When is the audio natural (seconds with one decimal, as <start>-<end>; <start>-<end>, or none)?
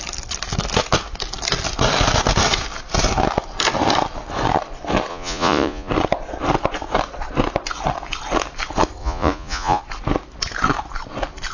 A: 0.0-5.1; 5.9-9.0; 9.8-11.5